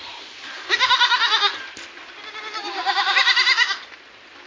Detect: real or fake fake